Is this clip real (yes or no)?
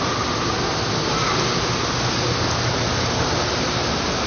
yes